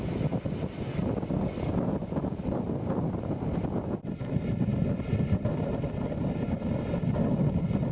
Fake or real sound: real